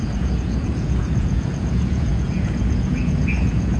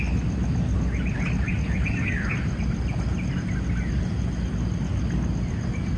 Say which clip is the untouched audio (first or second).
second